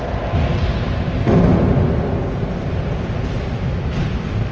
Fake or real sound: real